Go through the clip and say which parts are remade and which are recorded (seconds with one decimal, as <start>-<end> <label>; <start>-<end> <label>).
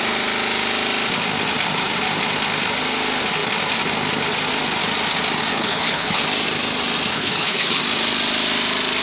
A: 0.0-5.5 recorded; 5.5-6.2 remade; 6.2-7.1 recorded; 7.1-7.8 remade; 7.8-9.0 recorded